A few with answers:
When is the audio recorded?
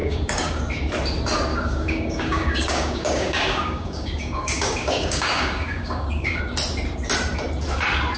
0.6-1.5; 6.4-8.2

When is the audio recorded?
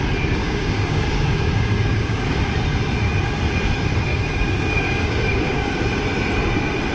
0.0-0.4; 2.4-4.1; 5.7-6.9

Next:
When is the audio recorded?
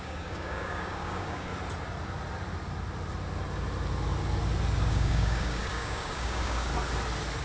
1.5-4.9; 6.7-7.4